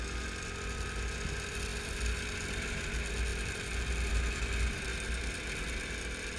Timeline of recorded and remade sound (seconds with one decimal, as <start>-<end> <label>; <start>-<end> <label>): 0.0-3.3 recorded; 3.3-4.1 remade; 4.1-6.4 recorded

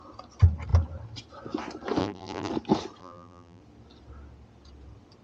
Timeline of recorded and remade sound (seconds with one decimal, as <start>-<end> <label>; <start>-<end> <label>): 0.0-2.0 recorded; 2.0-2.5 remade; 2.5-3.0 recorded; 3.0-3.6 remade; 3.6-5.2 recorded

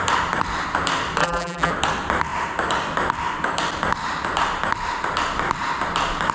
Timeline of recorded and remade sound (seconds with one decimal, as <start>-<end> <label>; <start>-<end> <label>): 0.0-1.2 recorded; 1.2-1.7 remade; 1.7-6.3 recorded

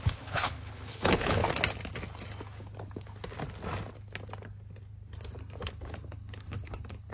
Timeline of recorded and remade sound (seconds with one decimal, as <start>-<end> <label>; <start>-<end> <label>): 0.0-1.4 remade; 1.4-5.7 recorded; 5.7-7.1 remade

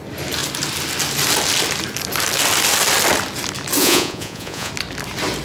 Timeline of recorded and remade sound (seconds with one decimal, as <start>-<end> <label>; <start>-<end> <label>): 0.0-3.8 recorded; 3.8-4.7 remade; 4.7-5.4 recorded

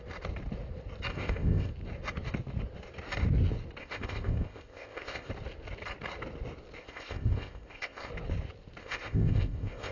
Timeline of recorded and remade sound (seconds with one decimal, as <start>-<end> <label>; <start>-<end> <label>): 0.0-1.1 recorded; 1.1-1.7 remade; 1.7-3.8 recorded; 3.8-5.3 remade; 5.3-6.8 recorded; 6.8-8.1 remade; 8.1-8.8 recorded; 8.8-9.9 remade